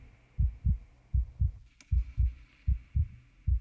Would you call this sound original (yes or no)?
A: yes